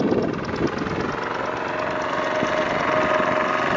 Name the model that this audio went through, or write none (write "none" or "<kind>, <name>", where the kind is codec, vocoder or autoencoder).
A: none